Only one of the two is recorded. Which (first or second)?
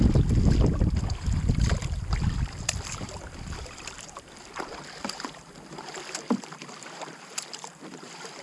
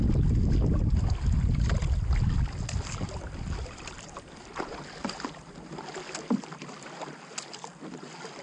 second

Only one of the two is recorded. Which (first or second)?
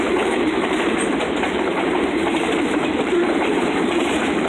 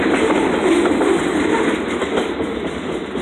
second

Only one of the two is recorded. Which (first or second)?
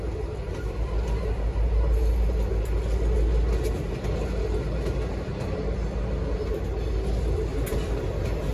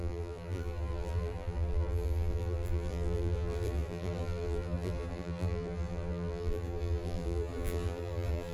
first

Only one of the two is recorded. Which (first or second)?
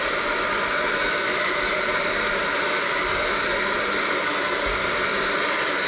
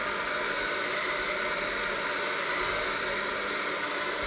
second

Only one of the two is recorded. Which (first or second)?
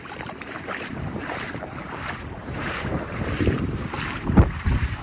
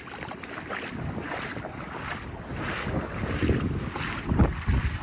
second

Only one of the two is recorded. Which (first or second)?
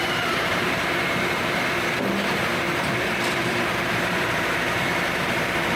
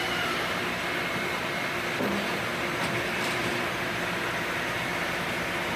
second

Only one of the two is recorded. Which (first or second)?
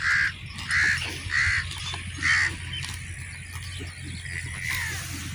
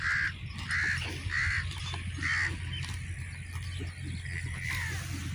first